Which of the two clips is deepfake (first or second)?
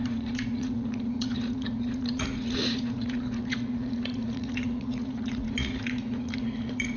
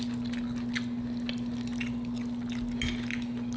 first